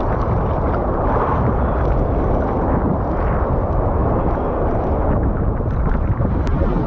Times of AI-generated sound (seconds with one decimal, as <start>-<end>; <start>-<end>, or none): 0.8-1.8; 4.0-6.9